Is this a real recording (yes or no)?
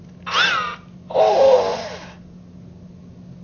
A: yes